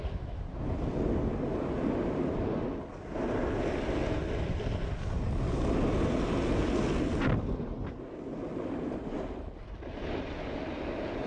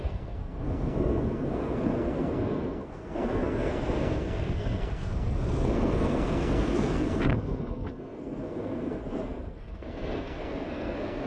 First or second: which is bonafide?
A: first